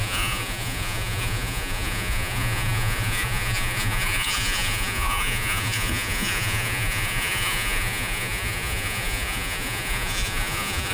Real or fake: fake